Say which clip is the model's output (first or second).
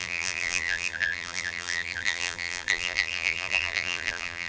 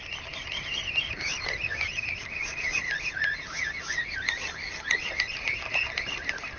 first